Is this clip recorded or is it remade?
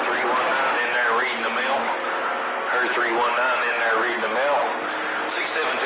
recorded